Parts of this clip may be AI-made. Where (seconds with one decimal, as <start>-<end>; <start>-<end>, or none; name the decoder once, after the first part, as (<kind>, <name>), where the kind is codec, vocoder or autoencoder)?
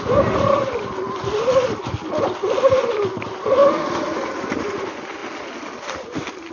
none